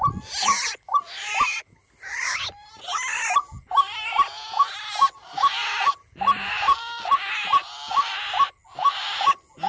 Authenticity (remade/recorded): recorded